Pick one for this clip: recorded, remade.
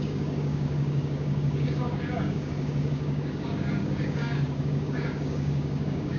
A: remade